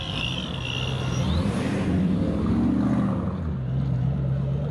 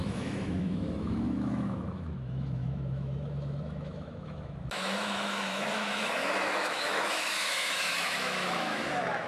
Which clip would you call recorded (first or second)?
first